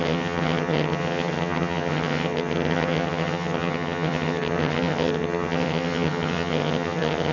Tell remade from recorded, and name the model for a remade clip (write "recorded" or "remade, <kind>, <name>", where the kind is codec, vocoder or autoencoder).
remade, vocoder, HiFi-GAN